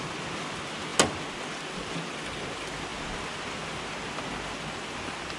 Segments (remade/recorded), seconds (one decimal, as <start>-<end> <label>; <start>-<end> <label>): 0.0-5.4 recorded